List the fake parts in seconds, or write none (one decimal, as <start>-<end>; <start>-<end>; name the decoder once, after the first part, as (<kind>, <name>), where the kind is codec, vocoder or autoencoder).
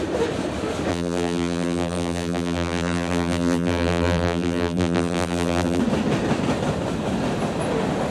0.9-5.8 (vocoder, BigVGAN v2)